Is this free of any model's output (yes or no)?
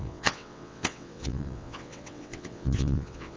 no